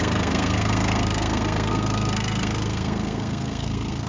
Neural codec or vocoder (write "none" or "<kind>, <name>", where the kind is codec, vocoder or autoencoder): codec, SNAC